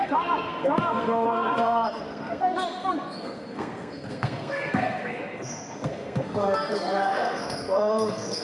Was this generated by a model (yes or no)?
yes